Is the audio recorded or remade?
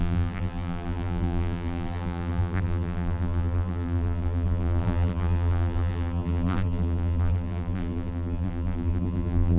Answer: remade